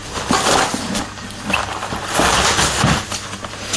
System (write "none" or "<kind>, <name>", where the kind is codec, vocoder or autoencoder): none